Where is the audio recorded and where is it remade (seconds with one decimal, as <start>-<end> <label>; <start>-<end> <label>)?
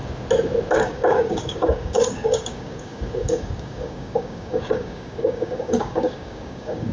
0.0-0.7 recorded; 0.7-6.9 remade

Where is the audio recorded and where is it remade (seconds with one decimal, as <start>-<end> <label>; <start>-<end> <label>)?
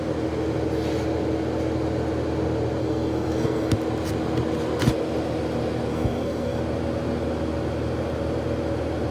0.0-2.8 recorded; 2.8-3.7 remade; 3.7-5.9 recorded; 5.9-6.6 remade; 6.6-9.1 recorded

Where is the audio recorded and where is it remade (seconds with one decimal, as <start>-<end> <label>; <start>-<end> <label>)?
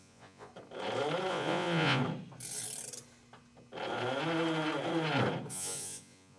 0.0-0.5 remade; 0.5-1.3 recorded; 1.3-2.0 remade; 2.0-5.5 recorded; 5.5-6.4 remade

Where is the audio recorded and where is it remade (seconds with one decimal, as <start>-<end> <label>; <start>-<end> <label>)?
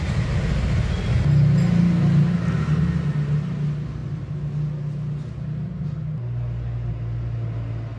0.0-8.0 recorded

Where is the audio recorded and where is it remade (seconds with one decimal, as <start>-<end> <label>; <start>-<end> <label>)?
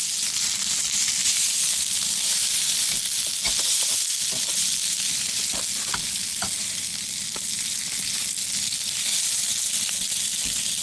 0.0-1.2 recorded; 1.2-2.9 remade; 2.9-4.5 recorded; 4.5-5.4 remade; 5.4-10.8 recorded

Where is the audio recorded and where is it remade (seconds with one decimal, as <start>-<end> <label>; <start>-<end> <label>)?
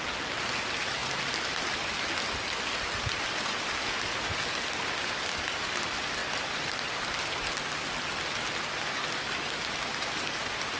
0.0-10.8 recorded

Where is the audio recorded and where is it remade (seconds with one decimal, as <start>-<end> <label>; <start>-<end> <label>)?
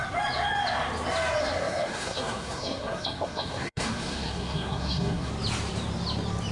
0.0-1.4 recorded; 1.4-5.3 remade; 5.3-6.5 recorded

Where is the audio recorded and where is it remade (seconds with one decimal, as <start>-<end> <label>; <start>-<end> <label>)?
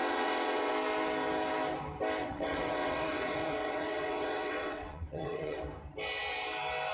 0.0-0.7 remade; 0.7-2.2 recorded; 2.2-5.6 remade; 5.6-6.9 recorded